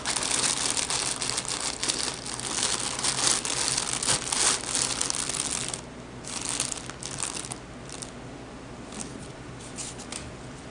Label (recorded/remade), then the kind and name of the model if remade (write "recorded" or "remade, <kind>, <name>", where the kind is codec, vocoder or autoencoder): recorded